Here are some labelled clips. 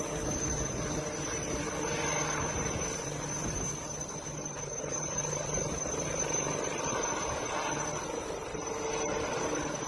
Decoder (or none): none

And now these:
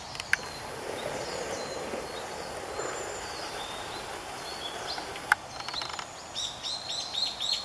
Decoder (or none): none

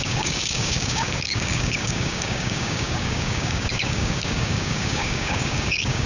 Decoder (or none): codec, DAC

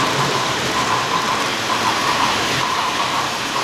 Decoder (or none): vocoder, BigVGAN v2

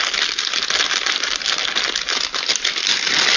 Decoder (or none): none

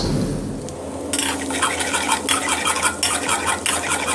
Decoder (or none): none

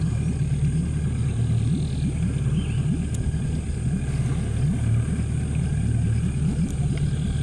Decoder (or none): none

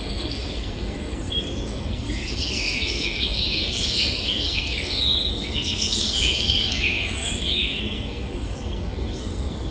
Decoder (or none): codec, SNAC